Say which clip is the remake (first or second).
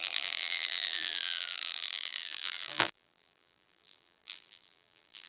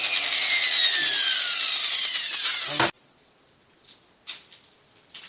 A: first